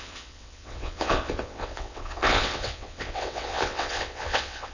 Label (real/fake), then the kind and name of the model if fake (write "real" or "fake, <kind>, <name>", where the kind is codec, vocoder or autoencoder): fake, vocoder, WaveNeXt